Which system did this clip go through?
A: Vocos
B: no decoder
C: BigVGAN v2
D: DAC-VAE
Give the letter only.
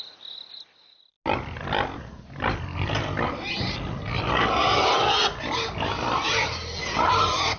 B